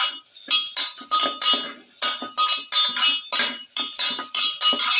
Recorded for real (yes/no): yes